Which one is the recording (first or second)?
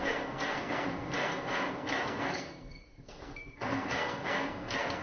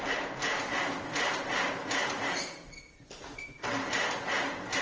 second